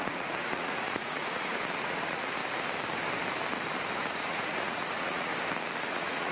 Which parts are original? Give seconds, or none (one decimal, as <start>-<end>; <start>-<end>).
2.4-3.9; 5.3-5.8